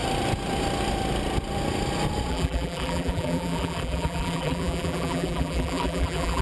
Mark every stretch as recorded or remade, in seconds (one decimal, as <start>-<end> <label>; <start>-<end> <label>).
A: 0.0-2.3 recorded; 2.3-6.4 remade